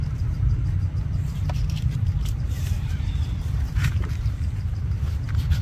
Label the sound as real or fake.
fake